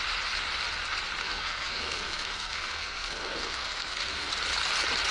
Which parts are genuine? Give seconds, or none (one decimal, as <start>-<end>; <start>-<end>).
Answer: 0.0-1.2; 4.3-5.1